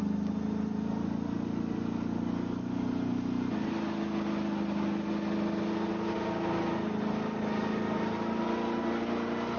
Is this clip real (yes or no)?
yes